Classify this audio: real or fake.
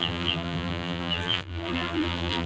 fake